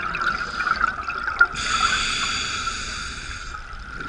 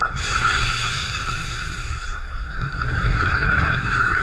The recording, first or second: first